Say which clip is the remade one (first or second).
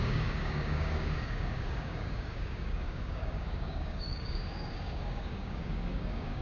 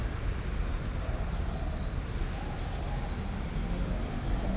first